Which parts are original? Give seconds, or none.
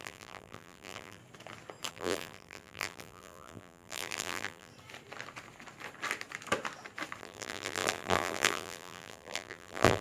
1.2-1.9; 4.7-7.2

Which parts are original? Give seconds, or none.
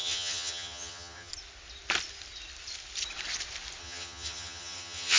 1.3-3.8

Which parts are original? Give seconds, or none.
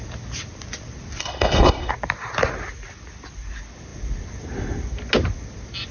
0.0-1.2; 1.9-5.9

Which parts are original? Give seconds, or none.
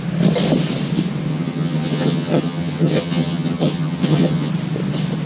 0.0-1.3; 4.5-5.3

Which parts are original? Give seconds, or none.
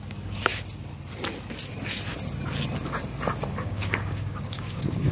0.5-3.6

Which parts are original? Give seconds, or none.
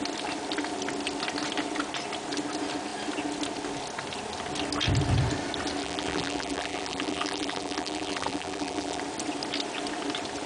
0.0-5.8; 9.0-10.5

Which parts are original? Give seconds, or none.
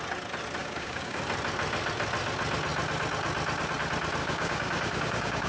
0.0-0.6; 1.2-4.2